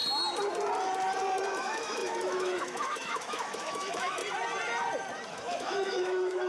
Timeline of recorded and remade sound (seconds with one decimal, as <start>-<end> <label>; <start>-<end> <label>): 0.0-1.5 recorded; 1.5-4.2 remade; 4.2-5.3 recorded; 5.3-6.5 remade